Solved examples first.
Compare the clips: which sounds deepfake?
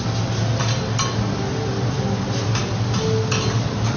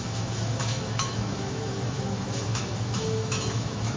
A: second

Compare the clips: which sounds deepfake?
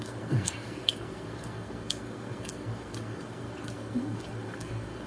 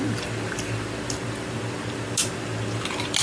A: first